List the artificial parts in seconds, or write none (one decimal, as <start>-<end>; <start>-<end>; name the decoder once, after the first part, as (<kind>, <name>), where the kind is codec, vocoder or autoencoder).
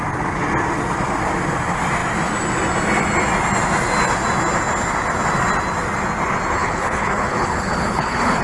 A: 6.6-8.4 (codec, HILCodec)